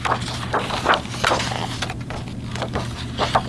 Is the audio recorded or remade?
recorded